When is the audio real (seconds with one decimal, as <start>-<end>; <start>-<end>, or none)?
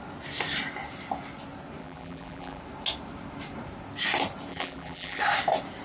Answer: 0.0-1.8; 2.6-4.5; 5.2-5.8